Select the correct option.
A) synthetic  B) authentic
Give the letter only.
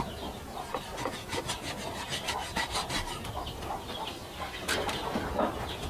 B